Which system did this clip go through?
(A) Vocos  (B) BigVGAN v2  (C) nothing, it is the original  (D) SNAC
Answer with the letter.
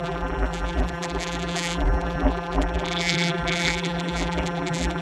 B